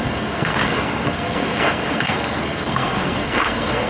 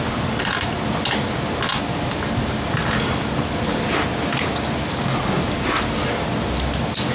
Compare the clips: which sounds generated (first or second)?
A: first